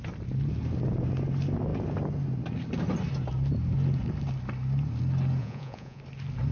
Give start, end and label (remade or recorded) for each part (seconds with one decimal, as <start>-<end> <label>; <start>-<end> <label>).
0.0-5.4 recorded; 5.4-6.0 remade; 6.0-6.5 recorded